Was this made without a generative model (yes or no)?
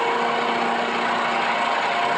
yes